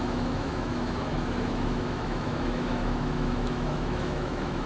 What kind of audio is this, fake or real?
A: fake